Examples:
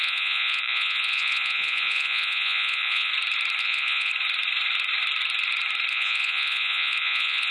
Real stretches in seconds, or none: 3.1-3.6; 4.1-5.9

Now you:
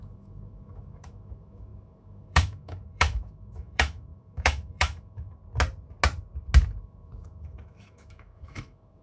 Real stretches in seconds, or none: 5.4-6.8

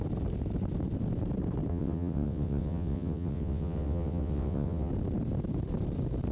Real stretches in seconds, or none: 0.0-1.7; 4.9-6.3

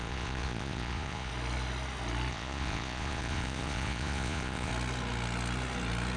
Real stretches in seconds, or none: 1.3-2.3; 4.7-6.2

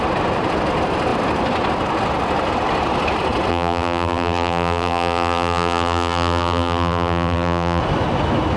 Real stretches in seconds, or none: 0.0-3.5; 7.8-8.6